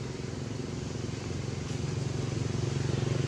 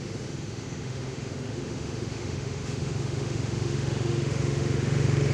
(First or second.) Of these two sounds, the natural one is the first